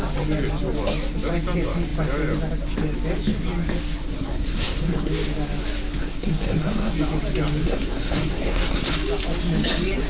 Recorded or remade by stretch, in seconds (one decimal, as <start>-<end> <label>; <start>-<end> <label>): 0.0-4.0 recorded; 4.0-5.1 remade; 5.1-6.0 recorded; 6.0-6.9 remade; 6.9-7.6 recorded; 7.6-8.9 remade; 8.9-10.1 recorded